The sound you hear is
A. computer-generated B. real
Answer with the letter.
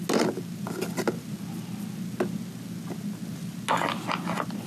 B